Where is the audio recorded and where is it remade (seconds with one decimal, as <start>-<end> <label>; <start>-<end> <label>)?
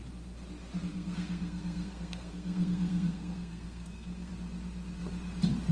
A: 0.0-0.9 recorded; 0.9-4.3 remade; 4.3-5.7 recorded